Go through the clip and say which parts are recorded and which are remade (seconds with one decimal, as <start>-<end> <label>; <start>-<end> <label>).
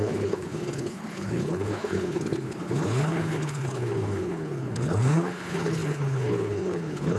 0.0-7.2 remade